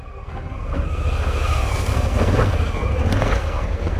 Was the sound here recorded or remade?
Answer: remade